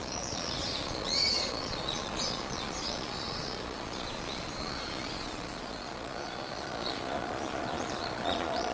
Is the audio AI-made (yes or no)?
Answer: yes